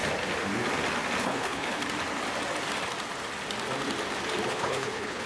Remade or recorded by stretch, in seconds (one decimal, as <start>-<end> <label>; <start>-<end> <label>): 0.0-1.2 recorded; 1.2-1.8 remade; 1.8-4.5 recorded; 4.5-5.3 remade